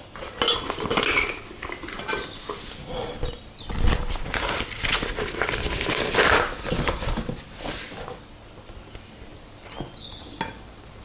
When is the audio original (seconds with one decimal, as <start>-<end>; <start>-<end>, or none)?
0.0-11.0